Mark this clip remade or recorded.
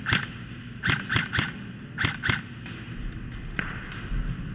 recorded